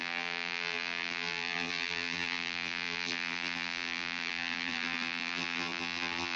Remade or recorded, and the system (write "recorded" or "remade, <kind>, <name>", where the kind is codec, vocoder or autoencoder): remade, vocoder, BigVGAN v2